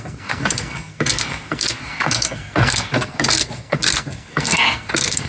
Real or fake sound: fake